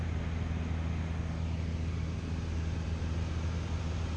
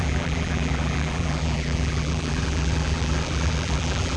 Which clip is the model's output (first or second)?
second